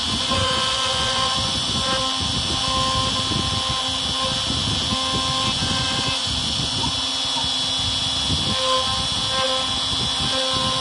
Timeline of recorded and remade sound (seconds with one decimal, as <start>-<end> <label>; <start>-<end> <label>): 0.0-2.0 remade; 2.0-5.6 recorded; 5.6-6.9 remade; 6.9-10.8 recorded